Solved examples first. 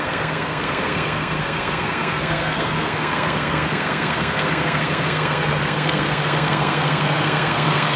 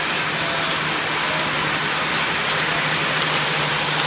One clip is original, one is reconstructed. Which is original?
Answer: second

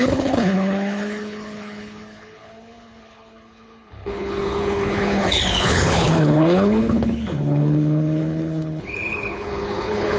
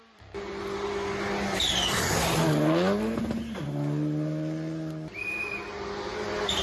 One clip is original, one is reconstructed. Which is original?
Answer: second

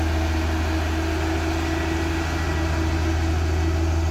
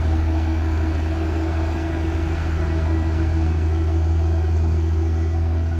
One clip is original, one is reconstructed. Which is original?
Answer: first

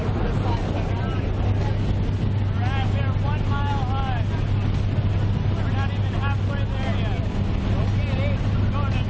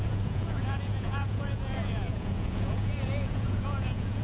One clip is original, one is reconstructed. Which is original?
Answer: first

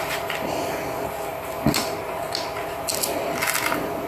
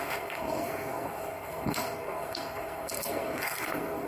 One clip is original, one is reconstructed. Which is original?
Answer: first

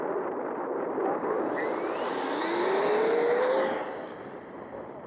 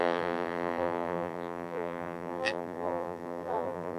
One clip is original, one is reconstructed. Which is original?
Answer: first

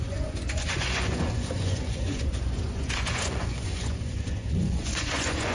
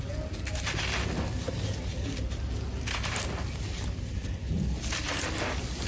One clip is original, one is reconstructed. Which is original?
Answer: second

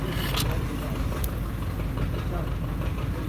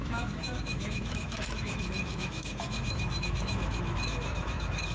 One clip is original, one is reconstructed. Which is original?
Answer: first